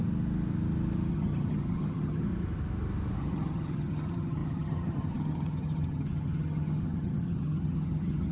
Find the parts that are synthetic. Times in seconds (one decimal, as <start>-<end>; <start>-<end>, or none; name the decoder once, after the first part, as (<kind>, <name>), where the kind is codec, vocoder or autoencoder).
1.1-2.3 (vocoder, HiFi-GAN); 3.2-8.3